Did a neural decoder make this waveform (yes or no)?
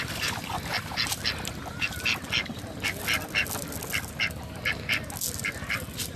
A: no